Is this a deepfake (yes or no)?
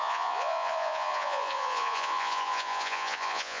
yes